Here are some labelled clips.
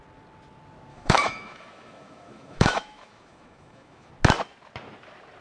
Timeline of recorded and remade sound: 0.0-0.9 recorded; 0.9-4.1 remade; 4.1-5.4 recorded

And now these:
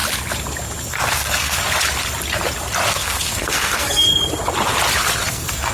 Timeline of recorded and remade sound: 0.0-0.9 recorded; 0.9-1.6 remade; 1.6-2.9 recorded; 2.9-4.2 remade; 4.2-5.3 recorded; 5.3-5.7 remade

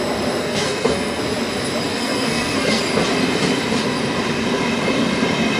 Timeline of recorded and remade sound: 0.0-0.4 recorded; 0.4-1.2 remade; 1.2-1.9 recorded; 1.9-2.8 remade; 2.8-5.6 recorded

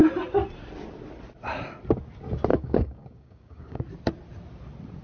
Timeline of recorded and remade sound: 0.0-2.5 recorded; 2.5-3.8 remade; 3.8-5.0 recorded

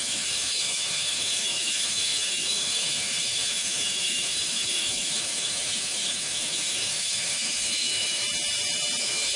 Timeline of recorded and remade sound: 0.0-8.2 remade; 8.2-9.0 recorded; 9.0-9.4 remade